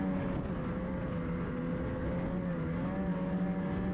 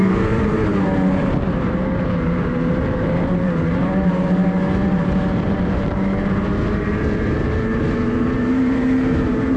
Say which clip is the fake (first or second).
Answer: second